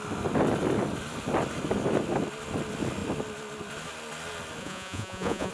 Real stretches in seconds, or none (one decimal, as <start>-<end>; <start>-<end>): 0.0-4.6